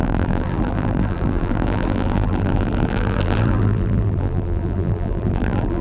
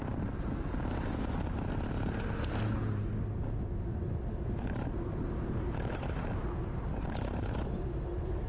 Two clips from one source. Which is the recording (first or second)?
second